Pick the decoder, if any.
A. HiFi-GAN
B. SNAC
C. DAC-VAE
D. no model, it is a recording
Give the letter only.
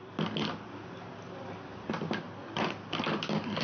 D